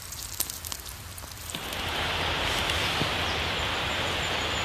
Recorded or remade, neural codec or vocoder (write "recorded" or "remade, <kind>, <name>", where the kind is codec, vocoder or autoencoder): recorded